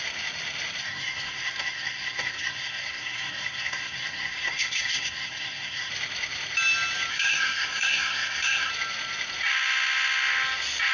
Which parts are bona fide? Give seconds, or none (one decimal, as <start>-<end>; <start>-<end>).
0.0-0.8; 5.9-7.1; 8.7-10.9

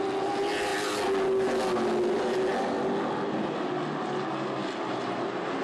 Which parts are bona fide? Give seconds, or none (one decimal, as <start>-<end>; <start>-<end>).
0.0-5.6

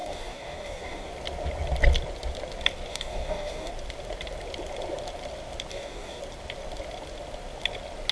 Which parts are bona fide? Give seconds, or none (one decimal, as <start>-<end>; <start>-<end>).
1.1-2.9; 3.7-5.7; 6.2-8.1

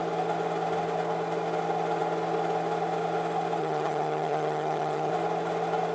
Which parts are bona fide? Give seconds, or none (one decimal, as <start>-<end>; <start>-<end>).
0.0-3.6; 5.1-5.9

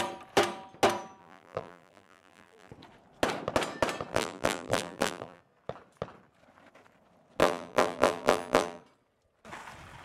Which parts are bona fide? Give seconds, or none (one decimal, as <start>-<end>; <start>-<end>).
0.0-1.2; 2.7-4.1; 5.4-7.4; 8.8-10.0